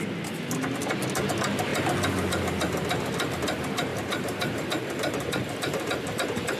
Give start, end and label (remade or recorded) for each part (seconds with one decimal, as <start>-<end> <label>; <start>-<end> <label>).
0.0-3.9 recorded; 3.9-5.9 remade; 5.9-6.6 recorded